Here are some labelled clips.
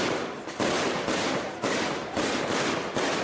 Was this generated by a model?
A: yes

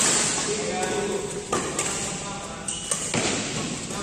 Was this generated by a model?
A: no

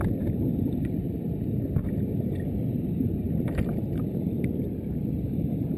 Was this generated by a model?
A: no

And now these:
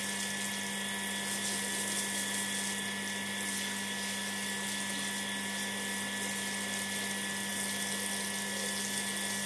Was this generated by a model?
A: no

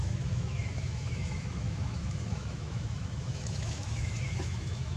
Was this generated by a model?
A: yes